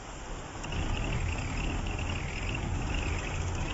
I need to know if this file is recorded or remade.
recorded